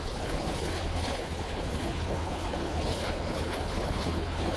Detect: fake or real fake